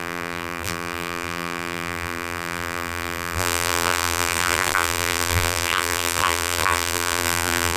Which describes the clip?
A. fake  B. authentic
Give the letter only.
A